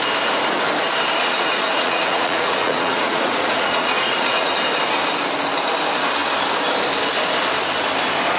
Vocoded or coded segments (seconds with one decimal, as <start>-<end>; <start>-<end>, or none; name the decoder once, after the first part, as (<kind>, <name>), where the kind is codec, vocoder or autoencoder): 1.2-4.5 (vocoder, Vocos)

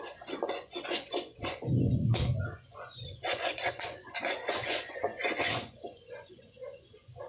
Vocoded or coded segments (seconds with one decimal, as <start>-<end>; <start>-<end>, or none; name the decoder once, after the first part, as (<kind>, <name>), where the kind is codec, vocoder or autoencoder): 0.0-7.3 (vocoder, Vocos)

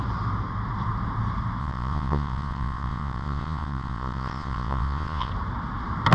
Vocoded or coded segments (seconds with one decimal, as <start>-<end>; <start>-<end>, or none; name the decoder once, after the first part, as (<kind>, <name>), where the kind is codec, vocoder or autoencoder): 1.6-5.3 (vocoder, Vocos)

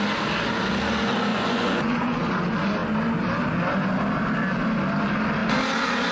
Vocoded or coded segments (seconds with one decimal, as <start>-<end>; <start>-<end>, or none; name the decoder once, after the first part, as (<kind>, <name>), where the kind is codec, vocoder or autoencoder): 1.3-2.2 (vocoder, Vocos)